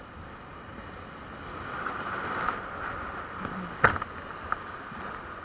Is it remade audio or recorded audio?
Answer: recorded